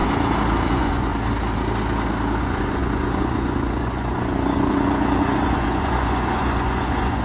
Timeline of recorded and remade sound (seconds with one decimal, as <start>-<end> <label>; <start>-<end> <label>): 0.0-0.7 recorded; 0.7-1.1 remade; 1.1-2.4 recorded; 2.4-7.2 remade